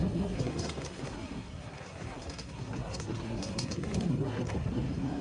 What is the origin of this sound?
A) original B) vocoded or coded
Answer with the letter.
B